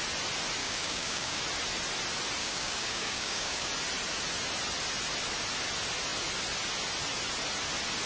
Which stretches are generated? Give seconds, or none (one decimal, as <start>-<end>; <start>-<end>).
0.6-1.4; 2.4-3.7